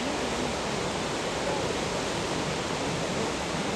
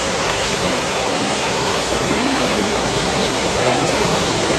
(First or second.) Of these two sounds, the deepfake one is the second